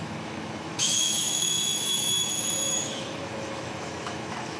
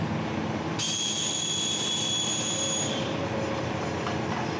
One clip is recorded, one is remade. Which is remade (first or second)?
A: first